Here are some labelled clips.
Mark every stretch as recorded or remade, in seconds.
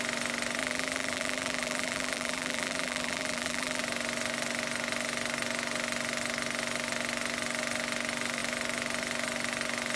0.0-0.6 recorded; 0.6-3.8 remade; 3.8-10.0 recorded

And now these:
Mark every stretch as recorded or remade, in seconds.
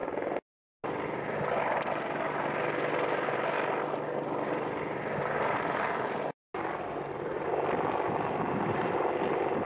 0.0-9.6 recorded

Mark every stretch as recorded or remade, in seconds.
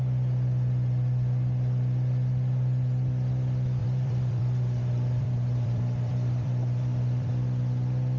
0.0-3.8 recorded; 3.8-7.3 remade; 7.3-8.2 recorded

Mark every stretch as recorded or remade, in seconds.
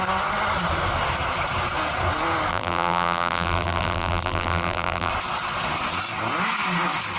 0.0-2.5 recorded; 2.5-5.1 remade; 5.1-7.2 recorded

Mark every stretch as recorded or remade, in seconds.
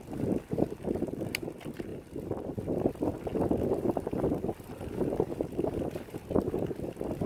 0.0-7.3 recorded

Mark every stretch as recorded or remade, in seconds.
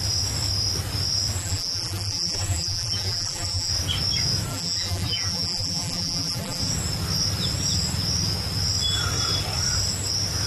0.0-1.4 recorded; 1.4-3.7 remade; 3.7-4.5 recorded; 4.5-6.6 remade; 6.6-10.5 recorded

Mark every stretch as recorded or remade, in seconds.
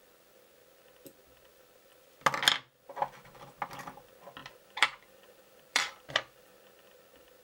0.0-4.4 recorded; 4.4-6.6 remade; 6.6-7.4 recorded